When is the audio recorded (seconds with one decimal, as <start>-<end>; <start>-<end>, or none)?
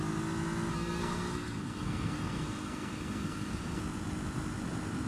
0.0-0.7; 3.8-5.1